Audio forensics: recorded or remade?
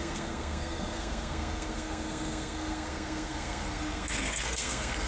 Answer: remade